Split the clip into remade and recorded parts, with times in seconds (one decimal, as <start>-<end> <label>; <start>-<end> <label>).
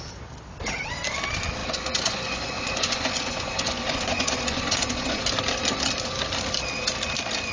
0.0-1.6 recorded; 1.6-5.2 remade; 5.2-7.5 recorded